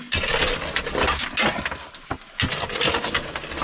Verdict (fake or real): real